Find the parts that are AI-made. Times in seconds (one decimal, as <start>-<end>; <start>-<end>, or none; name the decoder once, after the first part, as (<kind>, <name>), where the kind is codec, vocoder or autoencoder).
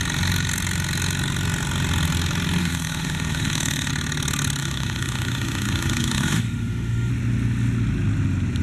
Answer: 2.6-3.9 (autoencoder, DAC-VAE); 4.6-7.1